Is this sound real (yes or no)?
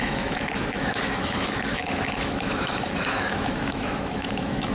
no